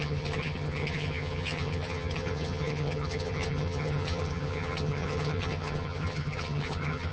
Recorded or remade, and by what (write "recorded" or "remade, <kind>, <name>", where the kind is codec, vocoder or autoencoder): remade, vocoder, HiFi-GAN